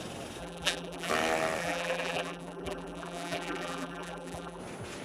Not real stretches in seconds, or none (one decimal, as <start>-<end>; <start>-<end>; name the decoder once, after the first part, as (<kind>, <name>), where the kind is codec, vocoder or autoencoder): 0.4-1.1 (vocoder, BigVGAN v2); 1.6-4.6